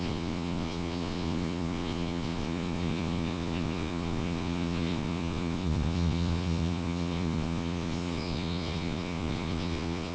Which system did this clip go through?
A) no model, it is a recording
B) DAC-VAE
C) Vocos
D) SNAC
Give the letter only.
C